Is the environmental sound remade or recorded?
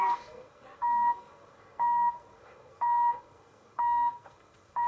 remade